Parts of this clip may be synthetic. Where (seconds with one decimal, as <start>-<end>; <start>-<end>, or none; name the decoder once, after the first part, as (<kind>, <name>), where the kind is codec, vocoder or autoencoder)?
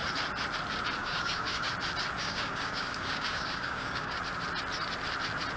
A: 1.0-1.7 (codec, DAC); 2.2-4.2